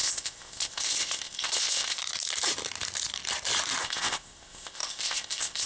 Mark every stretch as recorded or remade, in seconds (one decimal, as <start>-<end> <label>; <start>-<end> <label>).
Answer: 0.0-2.0 remade; 2.0-3.8 recorded; 3.8-5.7 remade